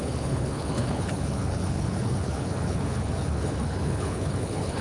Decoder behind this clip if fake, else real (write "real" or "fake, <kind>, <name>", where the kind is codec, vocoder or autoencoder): fake, codec, HILCodec